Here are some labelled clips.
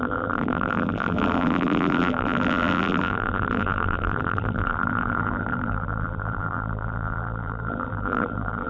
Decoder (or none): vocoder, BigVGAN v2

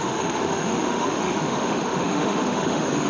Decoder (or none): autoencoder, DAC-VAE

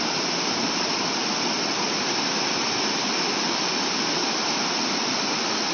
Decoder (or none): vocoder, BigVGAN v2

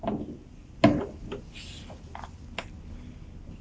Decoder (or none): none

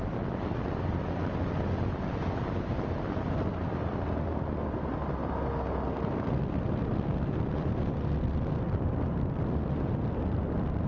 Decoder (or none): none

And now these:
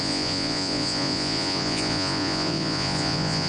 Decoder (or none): vocoder, Vocos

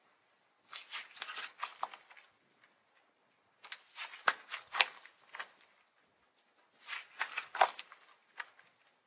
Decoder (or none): none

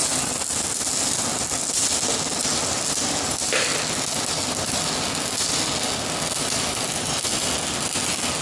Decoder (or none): none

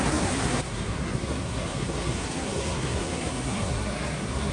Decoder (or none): codec, SNAC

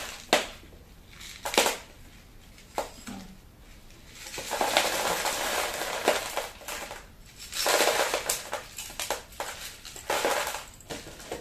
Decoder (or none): none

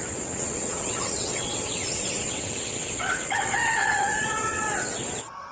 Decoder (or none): vocoder, WaveNeXt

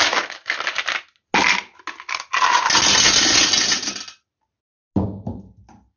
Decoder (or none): none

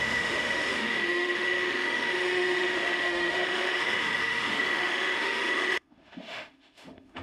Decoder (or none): autoencoder, DAC-VAE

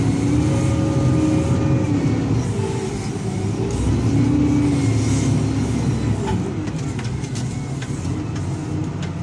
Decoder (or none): none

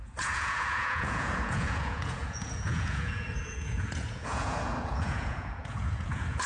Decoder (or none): vocoder, Vocos